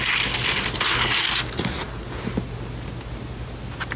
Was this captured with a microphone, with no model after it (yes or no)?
yes